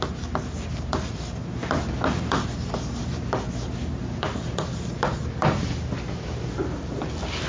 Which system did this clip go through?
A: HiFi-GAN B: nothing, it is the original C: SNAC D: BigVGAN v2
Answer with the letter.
B